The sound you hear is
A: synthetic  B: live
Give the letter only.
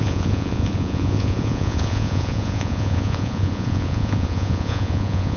A